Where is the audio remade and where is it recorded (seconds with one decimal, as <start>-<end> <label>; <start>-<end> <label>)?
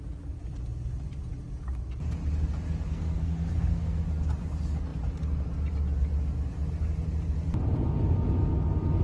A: 0.0-2.9 recorded; 2.9-4.0 remade; 4.0-9.0 recorded